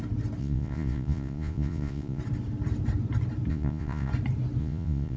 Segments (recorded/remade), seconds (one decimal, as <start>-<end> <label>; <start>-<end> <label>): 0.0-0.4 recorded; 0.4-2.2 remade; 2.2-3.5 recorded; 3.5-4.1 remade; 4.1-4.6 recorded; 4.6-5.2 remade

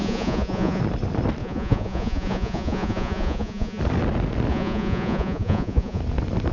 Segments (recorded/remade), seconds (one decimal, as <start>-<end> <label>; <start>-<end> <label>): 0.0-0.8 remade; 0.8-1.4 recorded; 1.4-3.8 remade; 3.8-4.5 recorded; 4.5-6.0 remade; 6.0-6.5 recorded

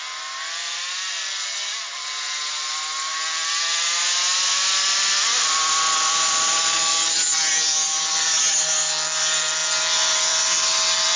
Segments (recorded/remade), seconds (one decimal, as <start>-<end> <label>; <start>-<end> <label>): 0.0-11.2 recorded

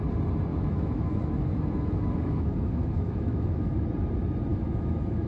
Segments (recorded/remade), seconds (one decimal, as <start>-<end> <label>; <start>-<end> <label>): 0.0-0.5 recorded; 0.5-3.7 remade; 3.7-4.5 recorded; 4.5-5.3 remade

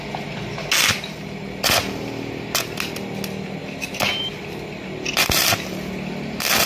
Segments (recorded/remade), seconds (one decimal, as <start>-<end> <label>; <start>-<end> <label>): 0.0-3.6 recorded; 3.6-4.2 remade; 4.2-6.7 recorded

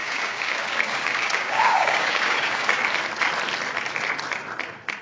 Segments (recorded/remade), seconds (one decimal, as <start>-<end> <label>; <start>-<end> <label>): 0.0-2.8 remade; 2.8-5.0 recorded

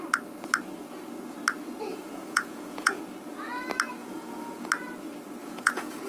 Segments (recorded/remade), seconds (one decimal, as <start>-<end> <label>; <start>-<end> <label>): 0.0-1.9 recorded; 1.9-3.0 remade; 3.0-4.0 recorded; 4.0-4.7 remade; 4.7-5.4 recorded; 5.4-6.1 remade

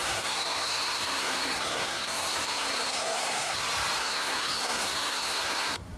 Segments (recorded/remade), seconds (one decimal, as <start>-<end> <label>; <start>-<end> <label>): 0.0-3.6 remade; 3.6-4.0 recorded; 4.0-6.0 remade